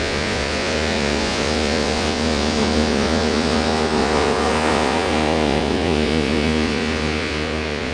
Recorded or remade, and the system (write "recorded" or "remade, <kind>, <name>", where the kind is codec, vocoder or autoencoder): remade, vocoder, Vocos